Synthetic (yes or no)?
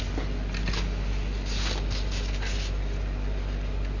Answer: no